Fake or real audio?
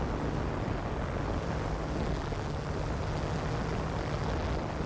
real